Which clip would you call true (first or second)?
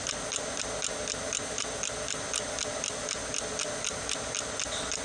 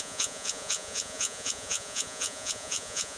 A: first